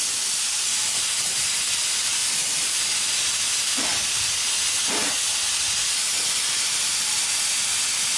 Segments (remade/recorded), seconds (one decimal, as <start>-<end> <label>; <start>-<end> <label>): 0.0-8.2 remade